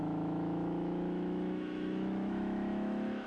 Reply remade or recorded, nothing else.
remade